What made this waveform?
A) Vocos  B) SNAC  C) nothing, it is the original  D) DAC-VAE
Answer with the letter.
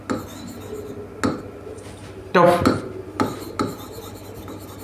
C